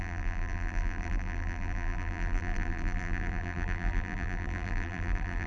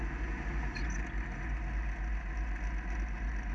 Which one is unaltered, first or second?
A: second